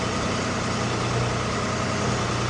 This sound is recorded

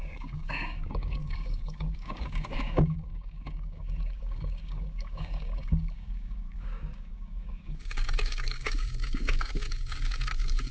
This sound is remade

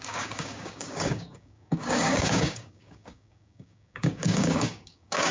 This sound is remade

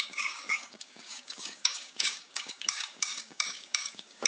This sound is remade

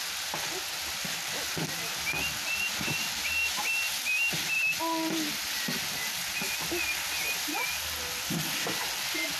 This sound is recorded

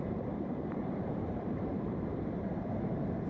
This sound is remade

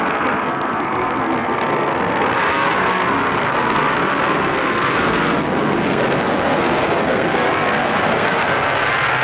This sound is remade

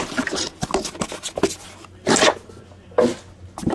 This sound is recorded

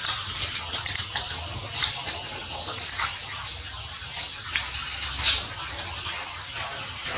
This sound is recorded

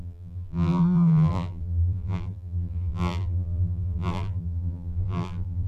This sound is remade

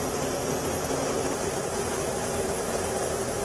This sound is recorded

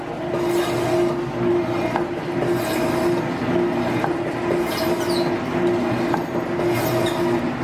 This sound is recorded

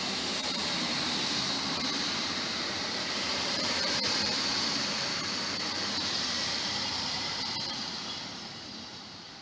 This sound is remade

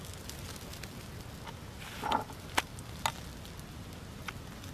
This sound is recorded